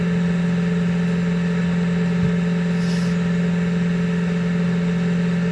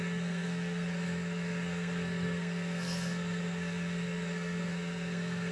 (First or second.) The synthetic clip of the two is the second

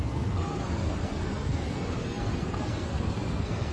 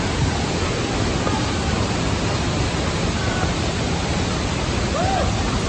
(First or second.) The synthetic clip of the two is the first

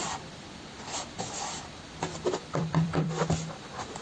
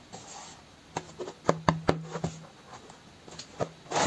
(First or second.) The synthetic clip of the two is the first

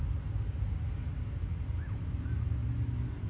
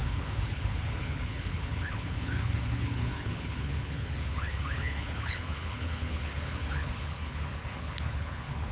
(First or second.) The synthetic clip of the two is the second